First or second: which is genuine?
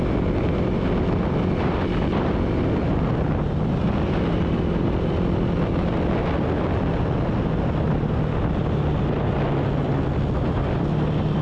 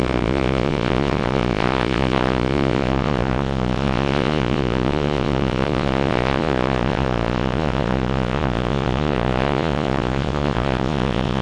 first